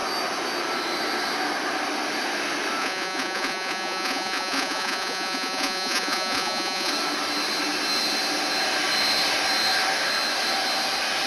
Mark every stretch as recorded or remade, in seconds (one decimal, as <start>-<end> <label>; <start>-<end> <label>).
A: 0.0-2.8 recorded; 2.8-6.9 remade; 6.9-11.3 recorded